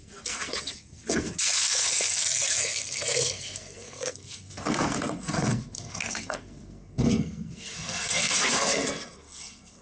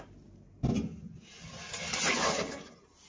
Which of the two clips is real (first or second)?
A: second